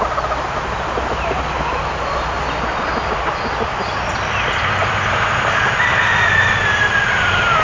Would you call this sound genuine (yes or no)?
yes